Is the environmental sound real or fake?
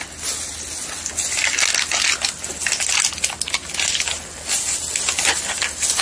real